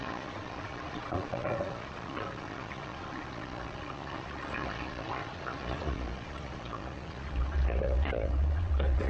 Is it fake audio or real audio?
fake